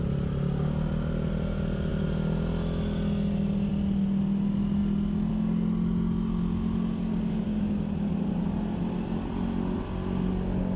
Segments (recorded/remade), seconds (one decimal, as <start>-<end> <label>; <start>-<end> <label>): 0.0-10.8 recorded